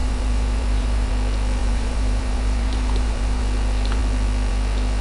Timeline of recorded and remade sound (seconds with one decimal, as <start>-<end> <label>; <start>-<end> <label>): 0.0-1.1 remade; 1.1-1.6 recorded; 1.6-3.4 remade; 3.4-5.0 recorded